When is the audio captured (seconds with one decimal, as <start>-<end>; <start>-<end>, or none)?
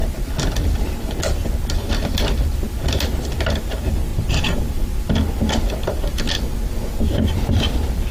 0.0-4.1; 4.6-8.1